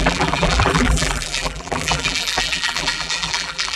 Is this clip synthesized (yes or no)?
yes